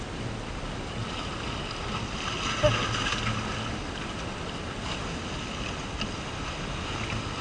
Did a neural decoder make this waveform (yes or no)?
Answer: no